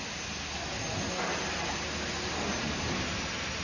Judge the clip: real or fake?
real